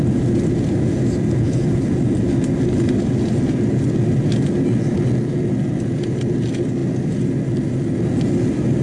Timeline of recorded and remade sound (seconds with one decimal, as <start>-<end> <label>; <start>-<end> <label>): 0.0-8.8 recorded

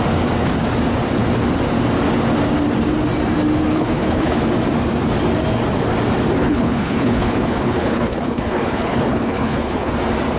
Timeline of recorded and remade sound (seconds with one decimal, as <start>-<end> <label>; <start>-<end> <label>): 0.0-3.7 recorded; 3.7-4.4 remade; 4.4-6.4 recorded; 6.4-9.9 remade; 9.9-10.4 recorded

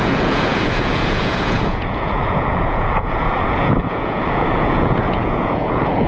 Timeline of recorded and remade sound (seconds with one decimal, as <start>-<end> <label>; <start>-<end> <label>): 0.0-6.1 remade

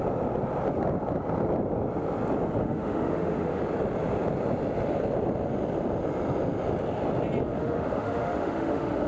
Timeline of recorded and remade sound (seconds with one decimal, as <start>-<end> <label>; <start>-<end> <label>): 0.0-2.6 recorded; 2.6-3.6 remade; 3.6-7.6 recorded; 7.6-9.1 remade

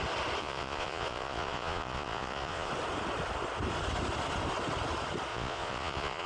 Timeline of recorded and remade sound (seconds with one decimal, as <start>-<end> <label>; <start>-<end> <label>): 0.0-0.4 recorded; 0.4-2.7 remade; 2.7-5.3 recorded; 5.3-6.3 remade

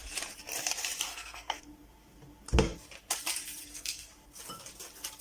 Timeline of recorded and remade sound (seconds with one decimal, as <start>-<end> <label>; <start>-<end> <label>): 0.0-1.1 recorded; 1.1-1.6 remade; 1.6-3.6 recorded; 3.6-4.1 remade; 4.1-5.2 recorded